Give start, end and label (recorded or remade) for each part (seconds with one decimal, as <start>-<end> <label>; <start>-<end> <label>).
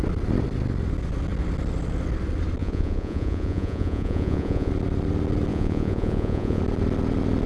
0.0-2.6 recorded; 2.6-4.7 remade; 4.7-5.5 recorded; 5.5-6.6 remade; 6.6-7.5 recorded